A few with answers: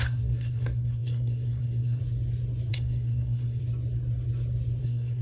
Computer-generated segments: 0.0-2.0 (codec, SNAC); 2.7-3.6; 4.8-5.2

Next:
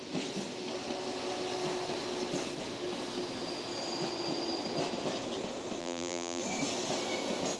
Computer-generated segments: 5.8-6.4 (vocoder, BigVGAN v2)